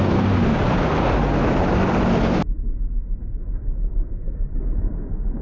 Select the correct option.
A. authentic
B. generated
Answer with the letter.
A